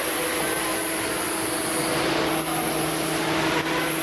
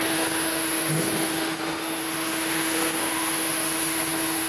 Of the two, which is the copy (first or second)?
second